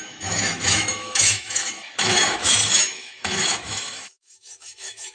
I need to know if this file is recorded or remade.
remade